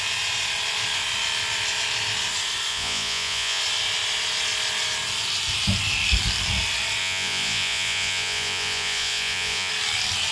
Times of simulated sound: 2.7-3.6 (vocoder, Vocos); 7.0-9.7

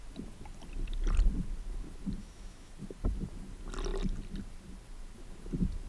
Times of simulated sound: 2.2-2.7 (autoencoder, DAC-VAE)

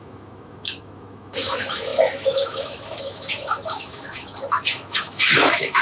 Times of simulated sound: 0.0-5.8 (autoencoder, DAC-VAE)

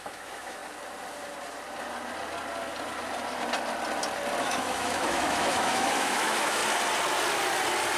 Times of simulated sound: 0.0-0.6 (autoencoder, DAC-VAE); 4.4-6.6

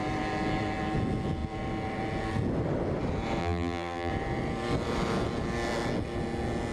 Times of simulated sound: 3.4-4.1 (vocoder, BigVGAN v2)

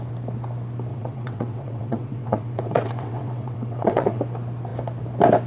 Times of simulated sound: 0.9-4.2 (vocoder, WaveNeXt)